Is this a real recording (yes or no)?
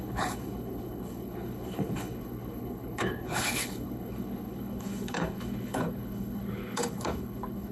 no